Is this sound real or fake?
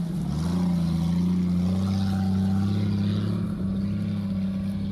real